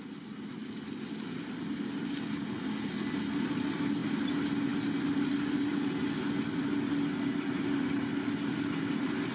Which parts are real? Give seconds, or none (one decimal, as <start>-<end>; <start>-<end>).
0.0-9.3